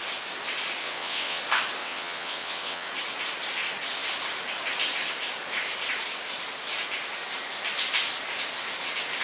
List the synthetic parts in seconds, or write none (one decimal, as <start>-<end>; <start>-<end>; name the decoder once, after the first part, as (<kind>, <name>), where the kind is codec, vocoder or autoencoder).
0.8-1.4 (vocoder, WaveNeXt); 1.8-2.9